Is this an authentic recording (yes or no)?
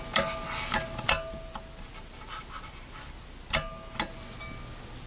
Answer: yes